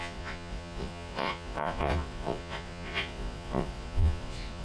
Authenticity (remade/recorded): remade